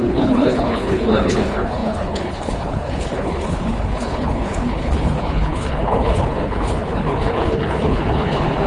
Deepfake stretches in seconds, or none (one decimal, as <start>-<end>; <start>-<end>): 0.0-8.7